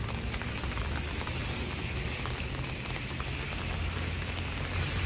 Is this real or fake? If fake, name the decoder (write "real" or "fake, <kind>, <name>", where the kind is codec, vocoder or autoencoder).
real